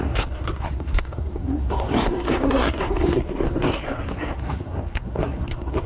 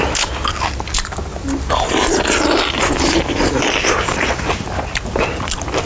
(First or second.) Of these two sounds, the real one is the second